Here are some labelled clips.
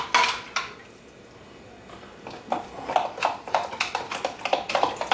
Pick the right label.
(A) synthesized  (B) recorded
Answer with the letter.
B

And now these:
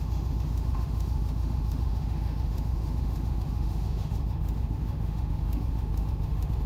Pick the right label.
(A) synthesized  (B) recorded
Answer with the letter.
A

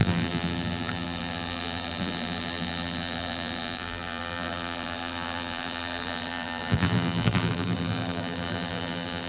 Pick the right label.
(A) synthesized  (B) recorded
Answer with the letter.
A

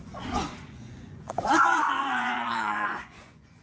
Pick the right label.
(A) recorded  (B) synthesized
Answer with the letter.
B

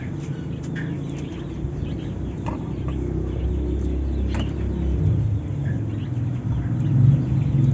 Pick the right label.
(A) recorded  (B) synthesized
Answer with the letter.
A